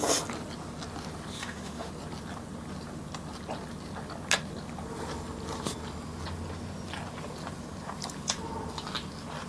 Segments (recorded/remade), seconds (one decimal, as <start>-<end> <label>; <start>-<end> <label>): 0.0-1.4 recorded; 1.4-1.9 remade; 1.9-9.5 recorded